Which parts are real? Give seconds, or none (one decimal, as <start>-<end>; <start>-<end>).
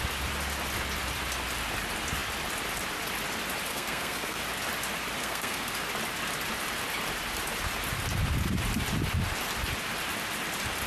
0.0-3.7; 4.4-5.2; 5.7-10.9